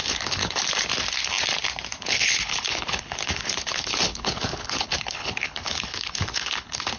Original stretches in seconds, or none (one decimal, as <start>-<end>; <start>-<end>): 0.6-2.0